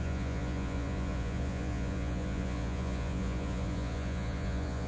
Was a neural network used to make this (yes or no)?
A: yes